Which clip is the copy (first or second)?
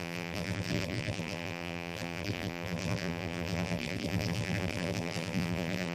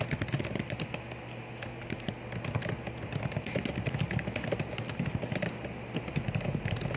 first